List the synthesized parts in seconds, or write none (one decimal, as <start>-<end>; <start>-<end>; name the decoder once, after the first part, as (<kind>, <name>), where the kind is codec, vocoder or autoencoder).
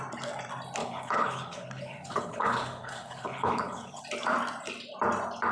0.8-4.0 (codec, HILCodec)